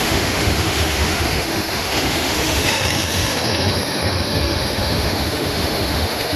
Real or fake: fake